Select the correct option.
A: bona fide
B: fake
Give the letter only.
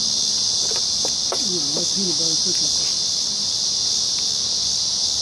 A